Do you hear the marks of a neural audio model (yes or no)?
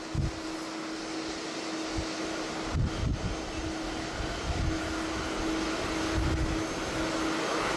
no